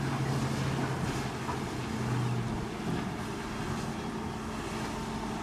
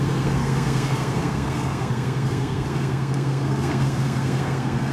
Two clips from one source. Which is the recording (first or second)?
first